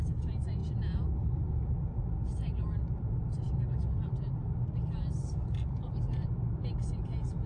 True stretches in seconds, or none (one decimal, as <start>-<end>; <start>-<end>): 0.0-7.5